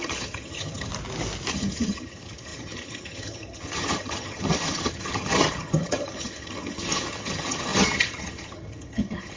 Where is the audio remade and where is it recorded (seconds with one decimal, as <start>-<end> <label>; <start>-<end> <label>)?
0.0-0.9 remade; 0.9-1.5 recorded; 1.5-9.4 remade